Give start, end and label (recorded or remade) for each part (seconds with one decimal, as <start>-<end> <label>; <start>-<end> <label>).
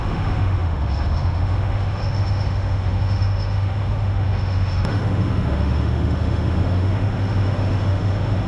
0.0-8.5 remade